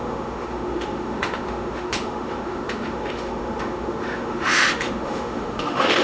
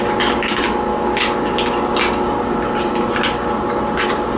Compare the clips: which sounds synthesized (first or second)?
first